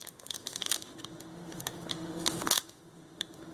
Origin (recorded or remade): remade